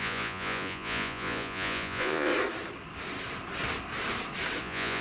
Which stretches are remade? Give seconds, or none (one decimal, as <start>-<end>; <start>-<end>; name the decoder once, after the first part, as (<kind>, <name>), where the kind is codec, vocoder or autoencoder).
0.0-2.3 (vocoder, Vocos); 4.6-5.0